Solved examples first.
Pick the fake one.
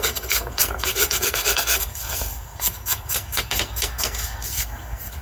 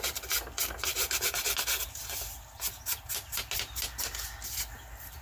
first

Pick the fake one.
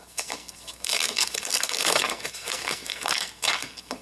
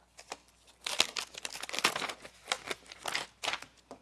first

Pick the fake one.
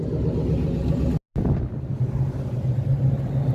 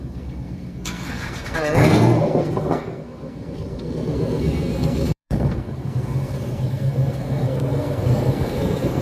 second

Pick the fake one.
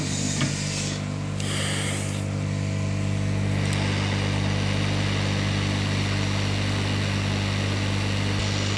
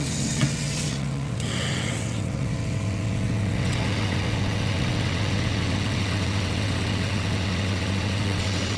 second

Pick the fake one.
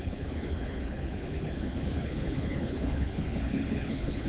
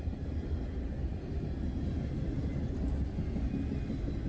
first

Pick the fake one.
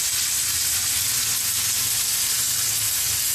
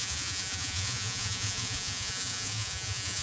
second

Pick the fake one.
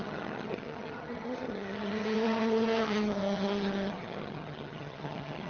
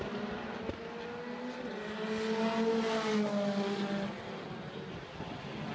first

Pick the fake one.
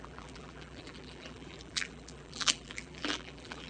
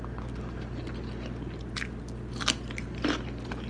first